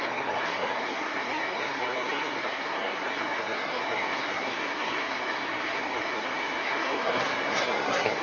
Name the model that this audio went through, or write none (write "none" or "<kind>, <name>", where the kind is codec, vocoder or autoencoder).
codec, SNAC